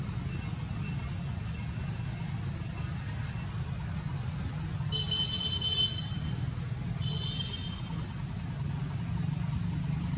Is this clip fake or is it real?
real